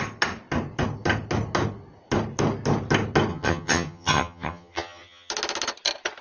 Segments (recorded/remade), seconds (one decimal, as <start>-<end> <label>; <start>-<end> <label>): 0.0-3.3 recorded; 3.3-5.3 remade; 5.3-6.2 recorded

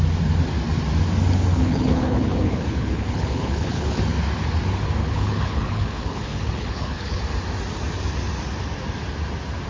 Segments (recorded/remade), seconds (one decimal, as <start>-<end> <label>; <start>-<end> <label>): 0.0-1.5 recorded; 1.5-4.0 remade; 4.0-5.0 recorded; 5.0-7.2 remade; 7.2-9.7 recorded